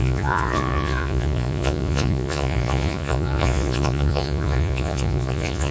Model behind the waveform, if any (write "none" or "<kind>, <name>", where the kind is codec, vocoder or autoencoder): vocoder, Vocos